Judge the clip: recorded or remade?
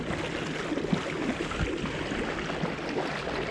recorded